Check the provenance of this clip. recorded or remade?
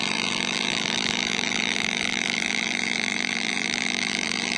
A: remade